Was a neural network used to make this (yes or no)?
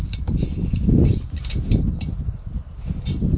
no